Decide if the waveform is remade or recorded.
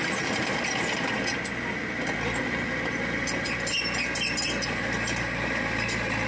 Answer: recorded